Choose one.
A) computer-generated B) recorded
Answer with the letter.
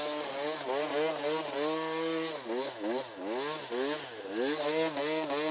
B